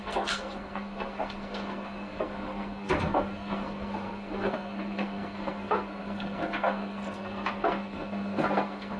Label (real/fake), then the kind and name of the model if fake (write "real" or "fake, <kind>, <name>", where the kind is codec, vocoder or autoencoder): fake, codec, SNAC